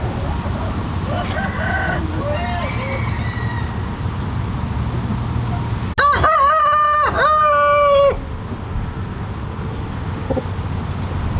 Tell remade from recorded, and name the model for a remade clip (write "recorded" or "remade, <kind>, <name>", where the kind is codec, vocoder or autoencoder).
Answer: recorded